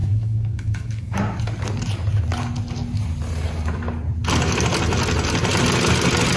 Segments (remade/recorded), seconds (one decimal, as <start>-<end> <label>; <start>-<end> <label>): 0.0-1.4 remade; 1.4-6.4 recorded